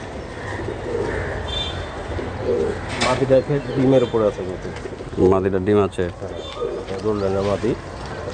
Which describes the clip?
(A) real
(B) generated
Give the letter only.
A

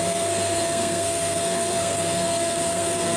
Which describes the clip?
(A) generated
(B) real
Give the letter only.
A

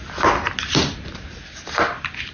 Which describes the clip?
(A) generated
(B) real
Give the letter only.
B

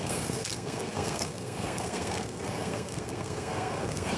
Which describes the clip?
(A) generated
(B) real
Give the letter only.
A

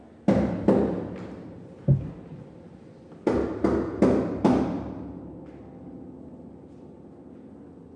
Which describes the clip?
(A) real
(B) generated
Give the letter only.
A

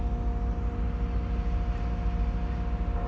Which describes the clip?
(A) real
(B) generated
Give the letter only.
A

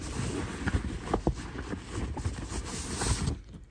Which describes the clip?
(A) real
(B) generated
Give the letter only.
A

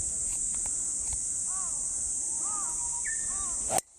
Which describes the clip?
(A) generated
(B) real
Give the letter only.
B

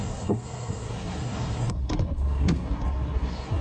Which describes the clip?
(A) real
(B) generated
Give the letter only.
B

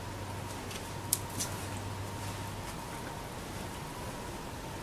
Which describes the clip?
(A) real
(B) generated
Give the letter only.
A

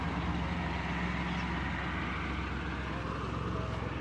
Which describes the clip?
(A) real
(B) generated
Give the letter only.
A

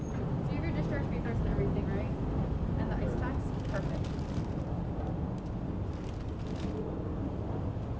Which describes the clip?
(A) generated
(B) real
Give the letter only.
B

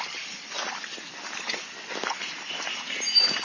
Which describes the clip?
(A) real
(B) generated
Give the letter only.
A